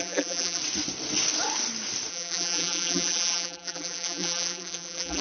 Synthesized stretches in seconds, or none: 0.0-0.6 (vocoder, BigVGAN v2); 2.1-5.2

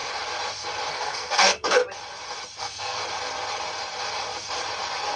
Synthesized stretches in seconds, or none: 0.9-1.8 (codec, SNAC); 2.6-3.0

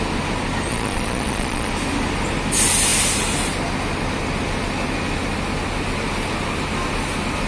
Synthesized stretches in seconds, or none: 0.7-1.7 (vocoder, Vocos)

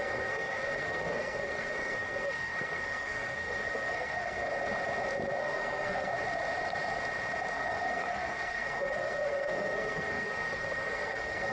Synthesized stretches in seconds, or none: 0.0-4.5 (codec, SNAC); 5.4-6.1; 7.5-11.5

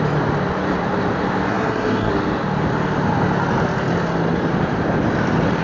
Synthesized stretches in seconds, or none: 1.5-2.1 (codec, SNAC)

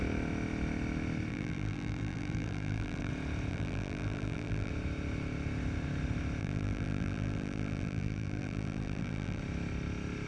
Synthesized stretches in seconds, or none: 1.3-3.1 (vocoder, BigVGAN v2); 3.5-4.7; 6.4-9.4